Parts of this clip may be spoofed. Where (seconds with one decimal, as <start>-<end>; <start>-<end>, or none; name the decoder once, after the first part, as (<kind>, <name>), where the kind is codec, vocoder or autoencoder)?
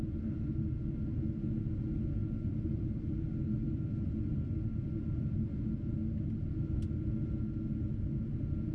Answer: none